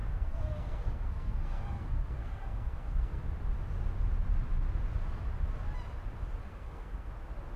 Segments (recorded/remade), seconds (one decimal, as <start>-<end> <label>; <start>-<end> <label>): 0.0-3.2 remade; 3.2-6.4 recorded; 6.4-7.1 remade; 7.1-7.6 recorded